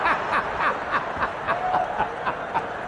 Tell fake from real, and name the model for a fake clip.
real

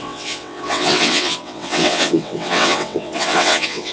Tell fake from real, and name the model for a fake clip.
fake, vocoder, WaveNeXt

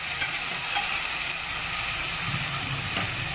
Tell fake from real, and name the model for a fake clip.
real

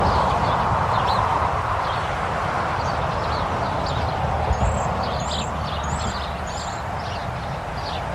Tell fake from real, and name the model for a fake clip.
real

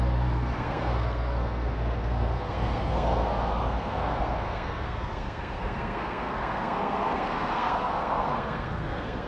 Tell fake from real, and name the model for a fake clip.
fake, codec, SNAC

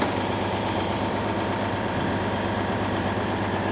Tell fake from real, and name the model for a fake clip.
fake, vocoder, BigVGAN v2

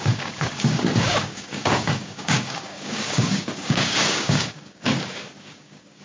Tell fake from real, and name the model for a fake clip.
fake, codec, DAC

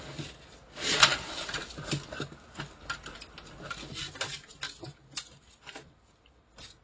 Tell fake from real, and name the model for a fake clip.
real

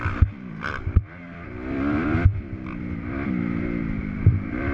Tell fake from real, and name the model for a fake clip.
fake, vocoder, BigVGAN v2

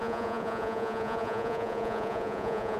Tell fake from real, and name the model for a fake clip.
fake, vocoder, Vocos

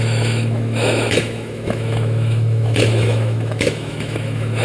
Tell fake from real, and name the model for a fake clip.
fake, autoencoder, DAC-VAE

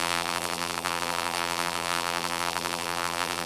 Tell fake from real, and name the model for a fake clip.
fake, vocoder, BigVGAN v2